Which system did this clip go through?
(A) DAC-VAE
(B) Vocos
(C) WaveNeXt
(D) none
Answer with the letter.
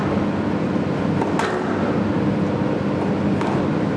D